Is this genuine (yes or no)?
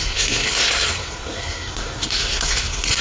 no